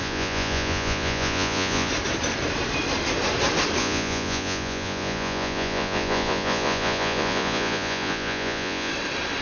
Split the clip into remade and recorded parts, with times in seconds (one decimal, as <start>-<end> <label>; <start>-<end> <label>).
0.0-1.9 remade; 1.9-3.8 recorded; 3.8-8.9 remade; 8.9-9.4 recorded